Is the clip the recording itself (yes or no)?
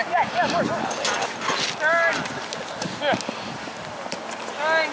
yes